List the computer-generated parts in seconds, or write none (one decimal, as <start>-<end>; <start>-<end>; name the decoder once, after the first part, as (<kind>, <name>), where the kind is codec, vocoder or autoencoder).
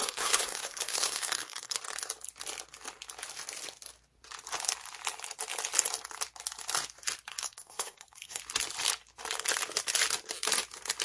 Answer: 0.0-1.8 (codec, SNAC); 7.3-8.4